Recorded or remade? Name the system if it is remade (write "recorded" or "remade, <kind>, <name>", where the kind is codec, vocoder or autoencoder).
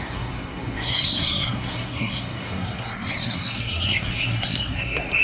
remade, codec, SNAC